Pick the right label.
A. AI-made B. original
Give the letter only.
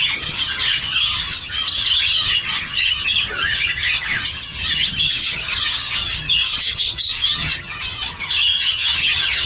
A